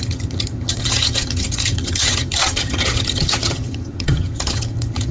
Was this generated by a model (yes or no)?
yes